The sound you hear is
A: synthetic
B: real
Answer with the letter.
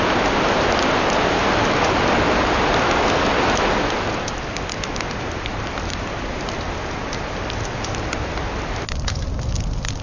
B